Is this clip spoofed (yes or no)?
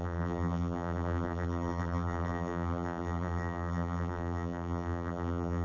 yes